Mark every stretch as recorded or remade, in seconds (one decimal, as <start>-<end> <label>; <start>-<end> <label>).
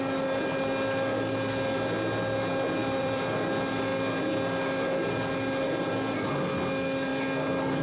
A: 0.0-2.8 recorded; 2.8-3.3 remade; 3.3-7.8 recorded